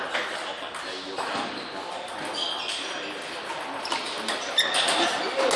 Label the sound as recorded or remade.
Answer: recorded